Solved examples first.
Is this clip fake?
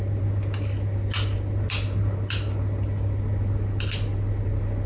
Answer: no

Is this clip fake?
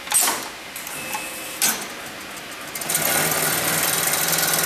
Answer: no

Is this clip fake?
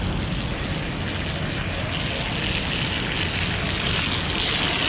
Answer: no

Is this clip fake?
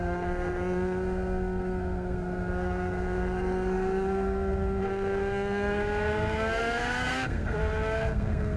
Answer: yes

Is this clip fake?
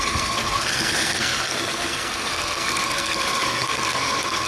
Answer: yes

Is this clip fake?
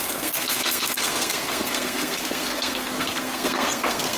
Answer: yes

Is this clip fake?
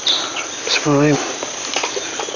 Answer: no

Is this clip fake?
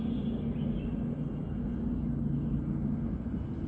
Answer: no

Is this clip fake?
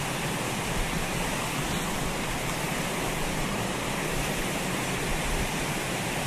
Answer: no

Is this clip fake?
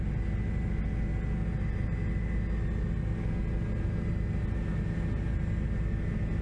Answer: no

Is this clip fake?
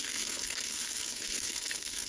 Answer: yes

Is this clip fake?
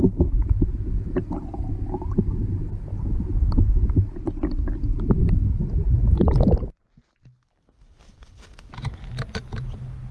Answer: no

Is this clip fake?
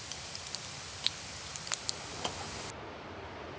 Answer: no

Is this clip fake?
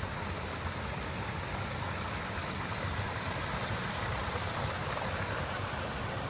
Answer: no